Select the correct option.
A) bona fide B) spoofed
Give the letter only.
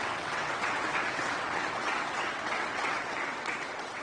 B